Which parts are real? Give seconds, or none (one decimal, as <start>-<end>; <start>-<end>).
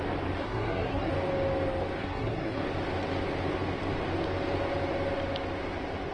0.0-0.4; 1.1-2.0; 2.6-6.1